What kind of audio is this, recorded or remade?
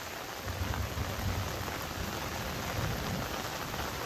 recorded